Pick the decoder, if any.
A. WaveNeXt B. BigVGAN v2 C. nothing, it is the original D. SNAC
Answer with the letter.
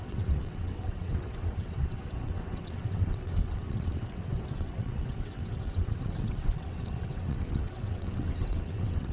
A